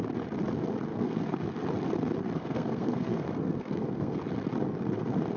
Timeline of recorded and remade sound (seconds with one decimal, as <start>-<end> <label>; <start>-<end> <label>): 0.0-0.9 recorded; 0.9-1.5 remade; 1.5-2.4 recorded; 2.4-4.2 remade; 4.2-5.4 recorded